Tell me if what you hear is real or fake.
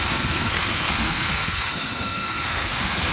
fake